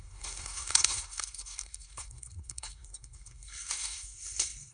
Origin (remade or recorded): remade